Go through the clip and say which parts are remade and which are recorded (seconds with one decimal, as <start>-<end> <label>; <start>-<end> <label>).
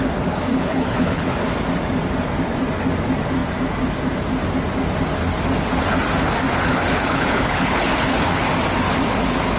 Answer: 0.0-0.5 recorded; 0.5-1.3 remade; 1.3-6.5 recorded; 6.5-8.4 remade; 8.4-9.6 recorded